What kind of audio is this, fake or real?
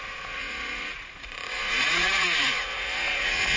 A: fake